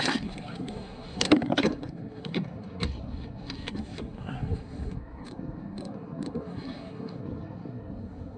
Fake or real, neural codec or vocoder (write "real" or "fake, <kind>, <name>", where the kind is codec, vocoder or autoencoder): fake, codec, SNAC